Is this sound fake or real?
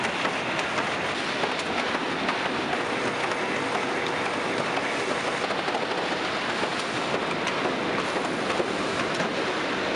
real